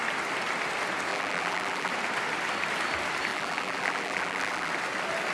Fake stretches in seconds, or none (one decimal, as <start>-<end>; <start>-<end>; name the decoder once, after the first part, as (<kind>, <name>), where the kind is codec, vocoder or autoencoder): 1.1-1.9 (vocoder, BigVGAN v2); 3.3-4.7

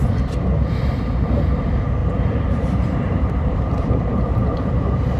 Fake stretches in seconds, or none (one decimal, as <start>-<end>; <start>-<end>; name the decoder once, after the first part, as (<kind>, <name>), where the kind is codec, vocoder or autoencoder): 2.0-5.2 (vocoder, BigVGAN v2)

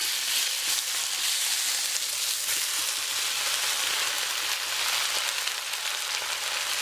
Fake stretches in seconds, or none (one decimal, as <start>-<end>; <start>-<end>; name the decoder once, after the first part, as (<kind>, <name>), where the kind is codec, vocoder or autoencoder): none

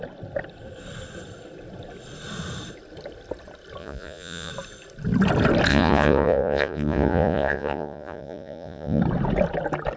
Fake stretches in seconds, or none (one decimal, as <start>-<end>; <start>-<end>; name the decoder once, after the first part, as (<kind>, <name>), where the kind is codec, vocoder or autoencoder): 3.8-4.5 (vocoder, Vocos); 5.7-9.0

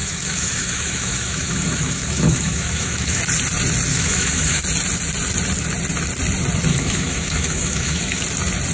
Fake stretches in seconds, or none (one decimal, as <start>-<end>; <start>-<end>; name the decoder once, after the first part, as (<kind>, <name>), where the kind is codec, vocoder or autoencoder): 0.0-3.2 (autoencoder, DAC-VAE); 3.9-4.6; 6.7-8.2